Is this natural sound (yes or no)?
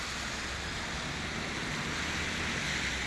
yes